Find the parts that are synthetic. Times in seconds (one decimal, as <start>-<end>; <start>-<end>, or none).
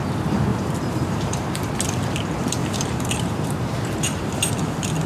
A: 0.5-1.8; 2.6-4.5